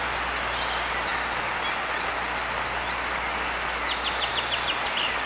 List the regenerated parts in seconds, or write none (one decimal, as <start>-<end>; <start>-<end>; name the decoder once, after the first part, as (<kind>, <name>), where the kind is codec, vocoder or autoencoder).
none

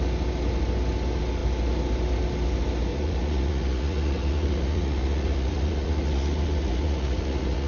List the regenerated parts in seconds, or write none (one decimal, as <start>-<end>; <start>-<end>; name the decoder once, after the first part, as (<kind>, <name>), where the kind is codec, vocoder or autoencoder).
2.9-7.7 (vocoder, Vocos)

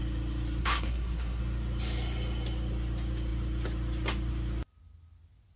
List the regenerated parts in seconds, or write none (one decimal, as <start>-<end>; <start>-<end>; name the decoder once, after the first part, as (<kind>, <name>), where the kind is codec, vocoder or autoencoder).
0.6-1.4 (codec, SNAC)